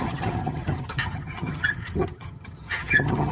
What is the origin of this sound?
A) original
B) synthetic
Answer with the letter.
B